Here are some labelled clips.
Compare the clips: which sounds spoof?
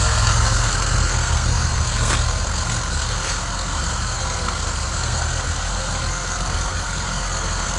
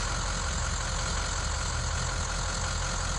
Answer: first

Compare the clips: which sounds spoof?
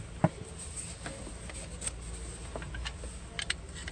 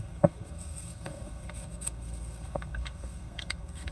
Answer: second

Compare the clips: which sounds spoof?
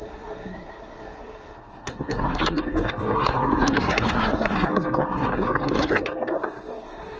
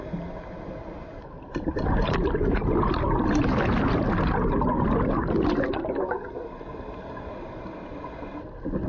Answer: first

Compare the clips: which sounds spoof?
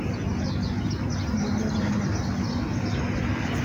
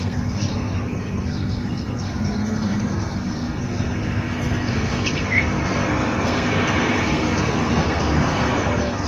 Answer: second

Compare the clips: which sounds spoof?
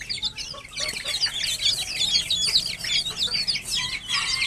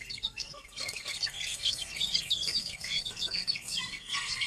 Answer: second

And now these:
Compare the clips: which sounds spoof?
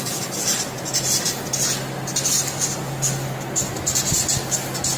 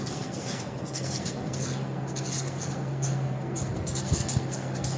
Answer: second